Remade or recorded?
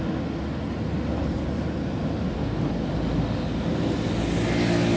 recorded